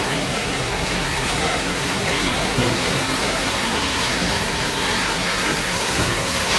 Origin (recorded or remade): remade